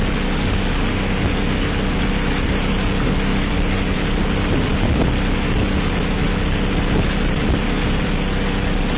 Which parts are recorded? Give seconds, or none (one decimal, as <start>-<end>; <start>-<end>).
0.0-9.0